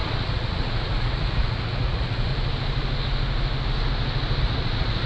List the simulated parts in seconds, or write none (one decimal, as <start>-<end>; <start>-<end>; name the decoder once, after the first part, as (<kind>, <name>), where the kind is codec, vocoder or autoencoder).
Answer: 0.0-2.3 (vocoder, Vocos); 4.4-5.1